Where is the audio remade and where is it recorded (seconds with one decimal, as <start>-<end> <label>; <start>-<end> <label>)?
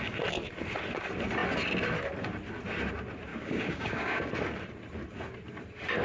0.0-3.3 recorded; 3.3-4.3 remade; 4.3-6.0 recorded